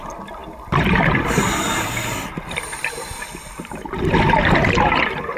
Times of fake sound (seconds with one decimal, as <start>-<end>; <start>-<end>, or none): 4.6-5.4